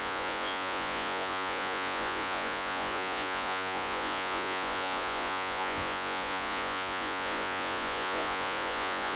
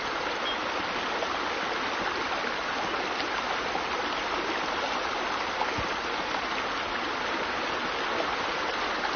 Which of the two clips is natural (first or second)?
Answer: second